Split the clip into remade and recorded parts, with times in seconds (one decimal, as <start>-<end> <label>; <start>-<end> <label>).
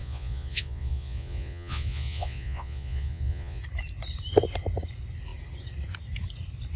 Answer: 0.0-3.6 remade; 3.6-6.8 recorded